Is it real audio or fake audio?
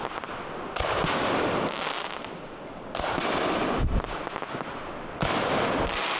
real